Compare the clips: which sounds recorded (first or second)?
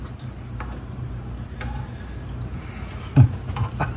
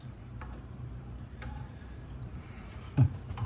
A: first